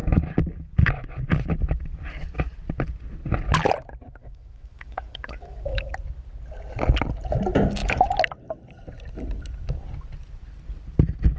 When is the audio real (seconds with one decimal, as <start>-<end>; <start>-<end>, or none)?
0.0-4.2; 5.9-11.4